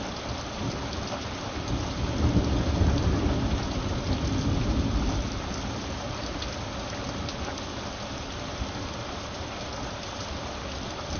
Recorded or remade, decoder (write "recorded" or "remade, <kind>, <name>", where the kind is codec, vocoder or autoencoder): recorded